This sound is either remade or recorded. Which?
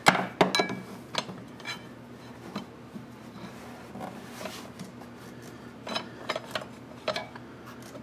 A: recorded